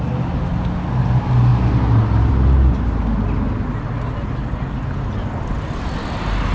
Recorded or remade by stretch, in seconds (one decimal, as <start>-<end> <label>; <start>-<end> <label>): 0.0-6.5 recorded